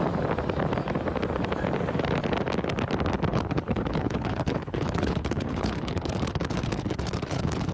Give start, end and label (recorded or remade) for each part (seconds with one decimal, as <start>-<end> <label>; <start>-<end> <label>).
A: 0.0-3.3 recorded; 3.3-7.7 remade